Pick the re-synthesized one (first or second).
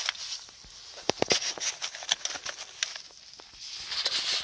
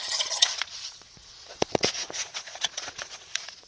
second